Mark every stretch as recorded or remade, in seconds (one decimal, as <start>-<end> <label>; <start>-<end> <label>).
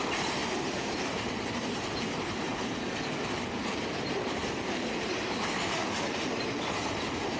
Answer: 0.0-5.8 remade; 5.8-6.4 recorded; 6.4-7.4 remade